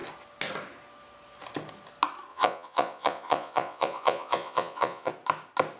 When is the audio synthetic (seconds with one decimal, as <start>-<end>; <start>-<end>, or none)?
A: 2.3-5.1